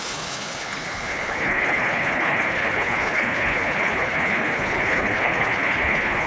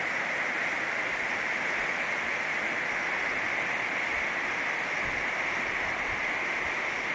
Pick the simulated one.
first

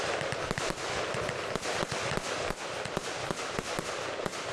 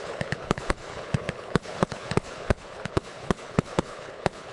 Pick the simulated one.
second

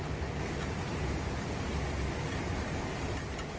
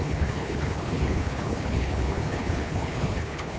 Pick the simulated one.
second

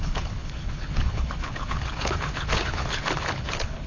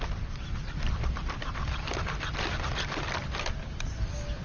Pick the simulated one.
first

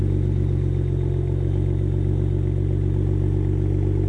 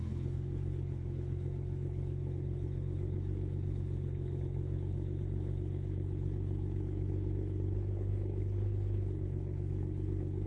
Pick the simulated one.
second